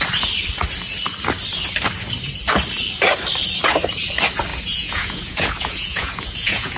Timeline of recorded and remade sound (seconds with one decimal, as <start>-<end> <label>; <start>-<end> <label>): 0.0-4.5 recorded; 4.5-6.8 remade